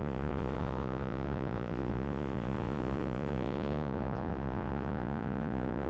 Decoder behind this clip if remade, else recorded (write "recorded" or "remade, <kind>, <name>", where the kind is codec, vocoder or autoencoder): remade, vocoder, Vocos